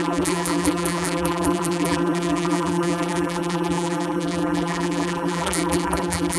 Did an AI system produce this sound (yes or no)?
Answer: yes